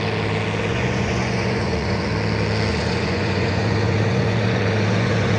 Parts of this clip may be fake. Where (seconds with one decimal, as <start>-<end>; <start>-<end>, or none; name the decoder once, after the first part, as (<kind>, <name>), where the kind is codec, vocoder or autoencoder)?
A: 0.7-2.1 (vocoder, Vocos); 2.7-5.4